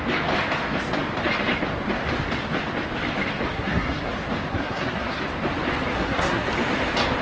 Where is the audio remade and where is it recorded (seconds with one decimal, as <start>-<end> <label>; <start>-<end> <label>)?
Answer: 0.0-3.5 recorded; 3.5-4.1 remade; 4.1-4.5 recorded; 4.5-5.2 remade; 5.2-5.9 recorded; 5.9-6.5 remade; 6.5-7.2 recorded